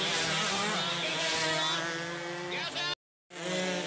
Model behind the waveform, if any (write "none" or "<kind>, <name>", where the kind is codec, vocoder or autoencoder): none